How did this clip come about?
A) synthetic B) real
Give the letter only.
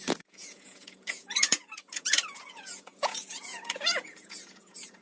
A